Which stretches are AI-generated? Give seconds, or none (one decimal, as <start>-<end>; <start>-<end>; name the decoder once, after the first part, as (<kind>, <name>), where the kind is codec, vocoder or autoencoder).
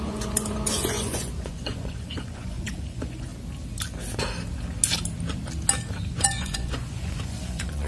0.0-3.3 (vocoder, Vocos); 6.1-7.9